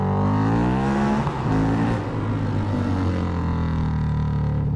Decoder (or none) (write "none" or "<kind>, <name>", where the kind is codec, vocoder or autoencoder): none